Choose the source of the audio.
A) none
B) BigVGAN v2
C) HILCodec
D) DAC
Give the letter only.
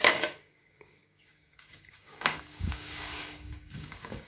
D